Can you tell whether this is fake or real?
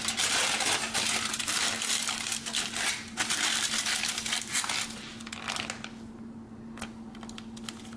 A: real